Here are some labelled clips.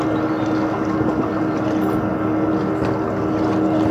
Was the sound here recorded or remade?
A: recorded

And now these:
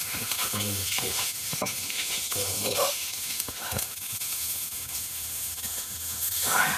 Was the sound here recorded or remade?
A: remade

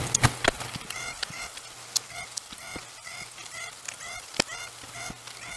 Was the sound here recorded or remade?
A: recorded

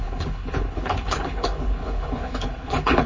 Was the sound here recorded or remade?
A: remade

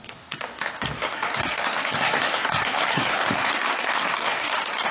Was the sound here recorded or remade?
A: remade